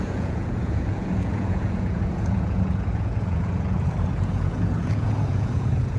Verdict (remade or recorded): remade